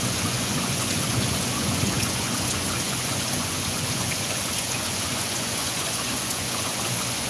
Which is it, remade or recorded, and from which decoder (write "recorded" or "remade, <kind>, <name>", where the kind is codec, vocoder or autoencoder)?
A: remade, vocoder, Vocos